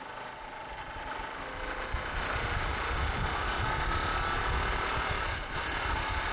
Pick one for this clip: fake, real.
real